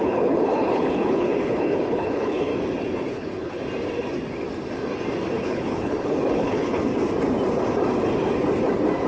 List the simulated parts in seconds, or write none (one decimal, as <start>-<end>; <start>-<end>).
0.0-2.5; 3.1-3.6; 5.4-6.9